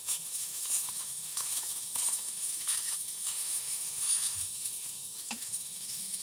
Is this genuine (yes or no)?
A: no